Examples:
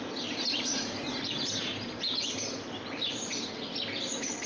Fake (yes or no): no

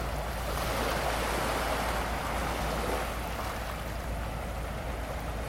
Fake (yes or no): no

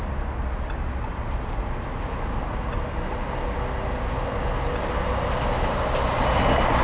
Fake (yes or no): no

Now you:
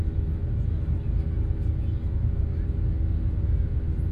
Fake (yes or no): no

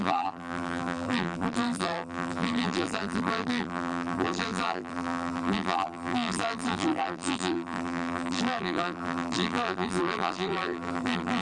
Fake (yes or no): yes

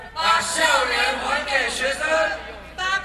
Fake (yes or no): no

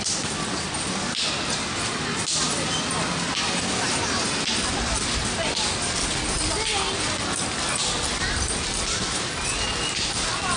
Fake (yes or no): no